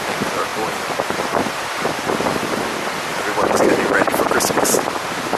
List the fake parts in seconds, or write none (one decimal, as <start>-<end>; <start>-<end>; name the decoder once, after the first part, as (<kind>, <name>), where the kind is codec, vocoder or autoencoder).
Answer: none